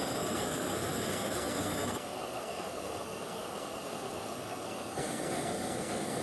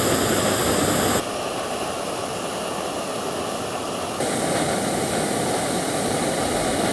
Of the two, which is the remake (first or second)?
first